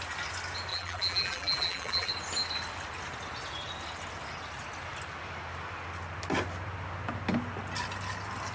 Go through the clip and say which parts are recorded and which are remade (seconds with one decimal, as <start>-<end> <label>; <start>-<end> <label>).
0.0-0.7 recorded; 0.7-2.1 remade; 2.1-8.5 recorded

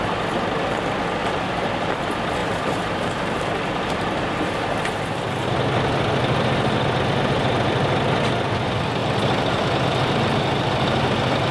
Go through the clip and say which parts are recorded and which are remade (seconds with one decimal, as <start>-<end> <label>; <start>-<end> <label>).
0.0-1.2 recorded; 1.2-2.0 remade; 2.0-2.4 recorded; 2.4-5.5 remade; 5.5-11.5 recorded